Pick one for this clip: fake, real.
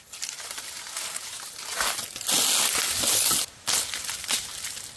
real